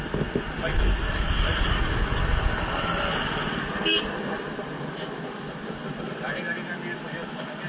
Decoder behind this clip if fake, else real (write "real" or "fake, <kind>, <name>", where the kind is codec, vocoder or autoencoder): real